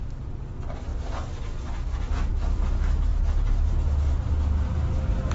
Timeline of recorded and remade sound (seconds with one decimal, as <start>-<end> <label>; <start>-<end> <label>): 0.0-5.3 recorded